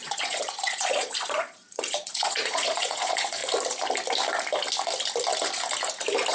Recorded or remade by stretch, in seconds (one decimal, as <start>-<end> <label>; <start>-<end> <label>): 0.0-3.4 remade; 3.4-6.3 recorded